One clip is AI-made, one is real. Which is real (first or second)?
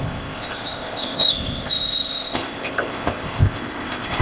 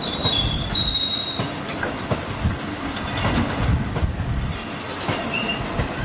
second